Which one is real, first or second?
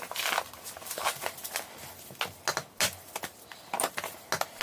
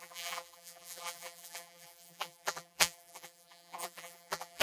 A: first